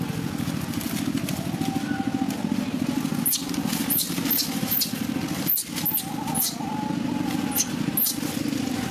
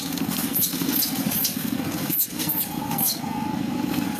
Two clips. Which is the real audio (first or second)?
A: first